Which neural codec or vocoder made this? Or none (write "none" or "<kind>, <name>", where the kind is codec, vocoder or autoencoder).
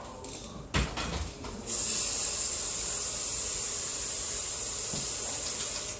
none